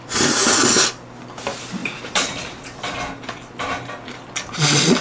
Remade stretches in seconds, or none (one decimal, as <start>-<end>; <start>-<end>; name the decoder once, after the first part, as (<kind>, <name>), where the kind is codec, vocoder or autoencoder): 0.0-0.9 (vocoder, BigVGAN v2); 1.8-5.0